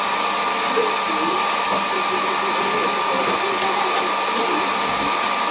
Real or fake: real